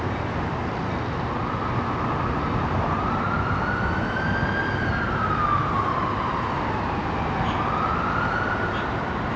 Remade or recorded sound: recorded